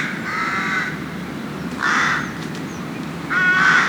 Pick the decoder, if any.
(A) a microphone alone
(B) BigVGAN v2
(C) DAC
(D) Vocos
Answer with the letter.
A